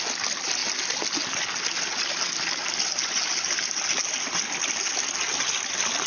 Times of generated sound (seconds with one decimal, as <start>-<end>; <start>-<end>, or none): none